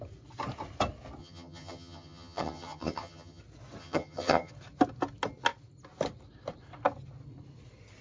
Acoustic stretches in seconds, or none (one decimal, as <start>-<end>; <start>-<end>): 0.0-1.2; 3.4-3.8; 4.5-8.0